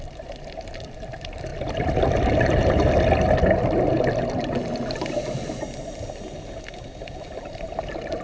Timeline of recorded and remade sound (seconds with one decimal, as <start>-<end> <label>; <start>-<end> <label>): 0.0-8.2 recorded